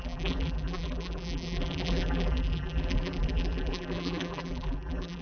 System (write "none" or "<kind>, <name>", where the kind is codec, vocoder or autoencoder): vocoder, BigVGAN v2